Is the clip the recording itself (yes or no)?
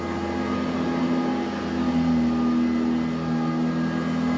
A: yes